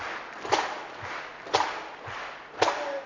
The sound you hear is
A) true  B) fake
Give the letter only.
A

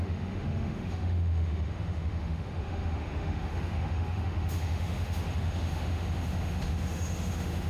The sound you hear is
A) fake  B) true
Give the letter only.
A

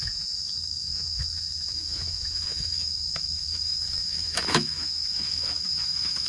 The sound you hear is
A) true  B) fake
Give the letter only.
B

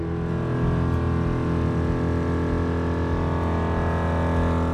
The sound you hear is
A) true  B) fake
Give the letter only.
A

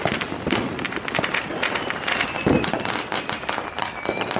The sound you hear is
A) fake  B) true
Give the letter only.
B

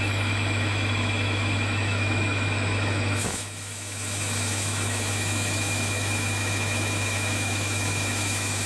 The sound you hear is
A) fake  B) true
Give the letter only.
A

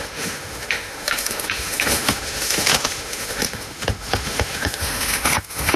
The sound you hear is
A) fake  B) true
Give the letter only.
A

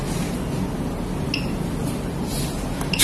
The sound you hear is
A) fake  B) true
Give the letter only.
B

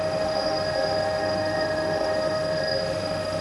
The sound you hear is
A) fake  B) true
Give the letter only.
A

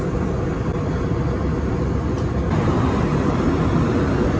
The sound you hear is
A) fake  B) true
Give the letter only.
B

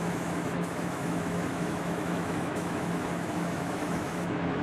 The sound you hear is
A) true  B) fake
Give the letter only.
B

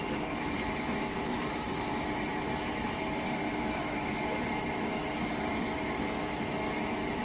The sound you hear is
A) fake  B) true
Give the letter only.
A